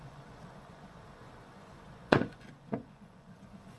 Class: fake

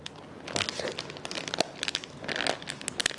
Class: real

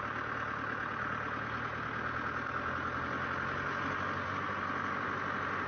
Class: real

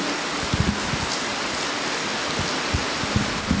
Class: real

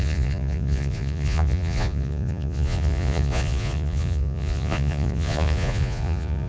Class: fake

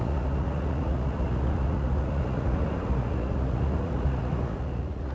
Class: fake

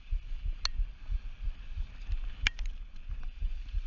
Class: real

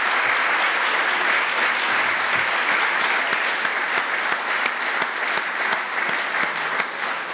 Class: real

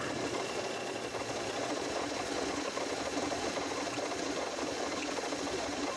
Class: fake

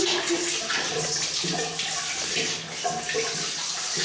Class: real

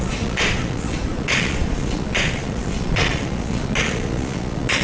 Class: fake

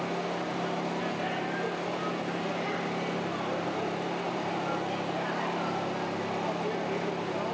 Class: real